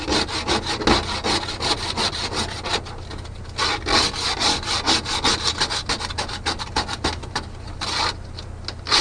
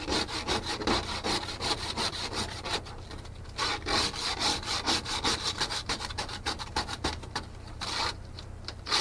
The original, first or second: first